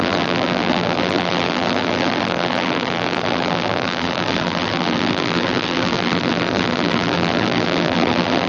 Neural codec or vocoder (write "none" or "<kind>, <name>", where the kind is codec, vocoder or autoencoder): vocoder, BigVGAN v2